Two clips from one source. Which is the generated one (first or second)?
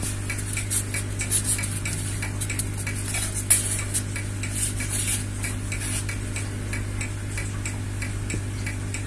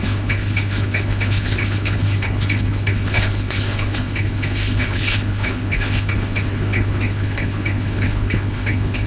second